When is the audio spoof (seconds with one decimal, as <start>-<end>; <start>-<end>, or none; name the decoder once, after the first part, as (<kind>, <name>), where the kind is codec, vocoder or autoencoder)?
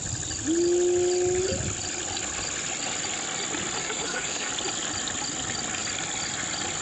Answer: 3.8-4.5 (codec, SNAC)